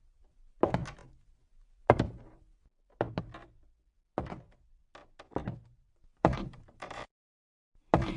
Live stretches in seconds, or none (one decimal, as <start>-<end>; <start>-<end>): 0.0-5.4; 7.4-8.2